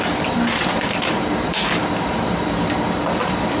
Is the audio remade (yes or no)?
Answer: yes